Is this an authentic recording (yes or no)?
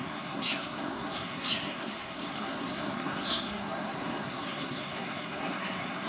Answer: no